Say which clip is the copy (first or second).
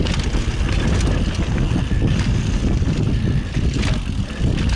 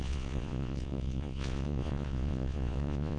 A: second